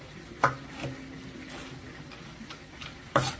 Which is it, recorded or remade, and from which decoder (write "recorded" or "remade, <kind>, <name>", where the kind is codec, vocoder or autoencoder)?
recorded